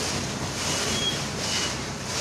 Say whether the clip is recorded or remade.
recorded